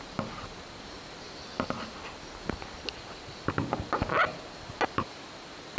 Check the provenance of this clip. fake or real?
real